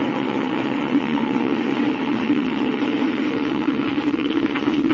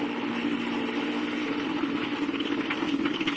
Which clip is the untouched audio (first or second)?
second